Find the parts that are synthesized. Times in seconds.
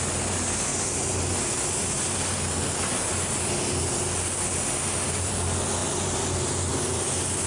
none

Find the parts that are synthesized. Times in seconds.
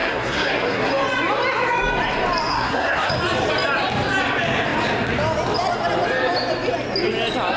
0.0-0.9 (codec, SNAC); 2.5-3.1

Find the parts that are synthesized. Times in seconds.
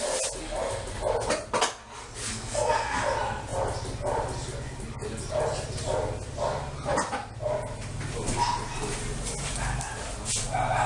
2.3-3.0 (codec, SNAC)